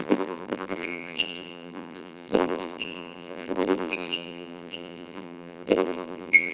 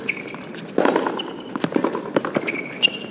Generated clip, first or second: first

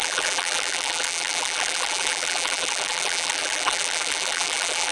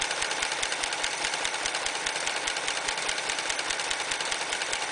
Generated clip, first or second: first